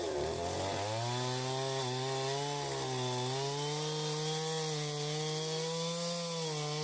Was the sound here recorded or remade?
recorded